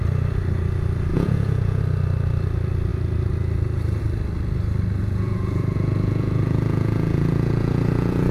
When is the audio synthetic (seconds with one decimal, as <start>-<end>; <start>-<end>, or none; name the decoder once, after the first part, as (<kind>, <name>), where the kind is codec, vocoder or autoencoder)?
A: 1.1-1.8 (vocoder, Vocos); 5.0-8.3